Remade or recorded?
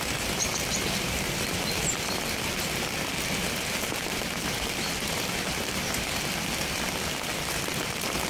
recorded